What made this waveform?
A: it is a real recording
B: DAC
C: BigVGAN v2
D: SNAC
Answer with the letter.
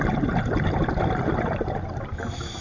A